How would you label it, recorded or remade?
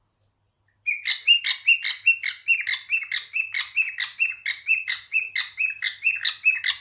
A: recorded